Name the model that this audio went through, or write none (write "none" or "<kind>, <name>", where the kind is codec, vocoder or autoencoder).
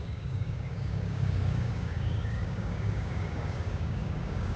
codec, DAC